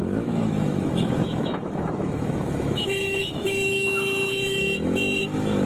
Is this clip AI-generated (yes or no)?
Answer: yes